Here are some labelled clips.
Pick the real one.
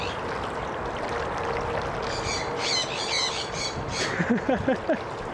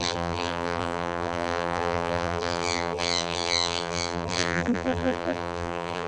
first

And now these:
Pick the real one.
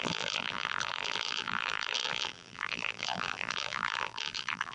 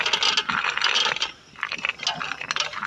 second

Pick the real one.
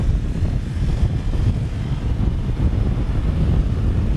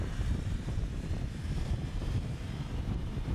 first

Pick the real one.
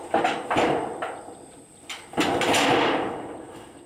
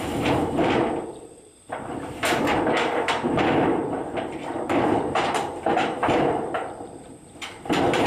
first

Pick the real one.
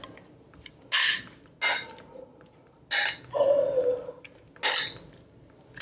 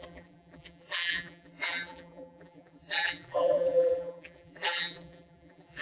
first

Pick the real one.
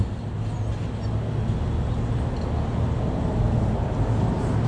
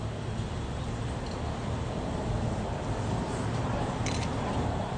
first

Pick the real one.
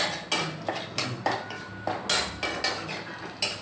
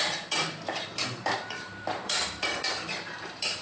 first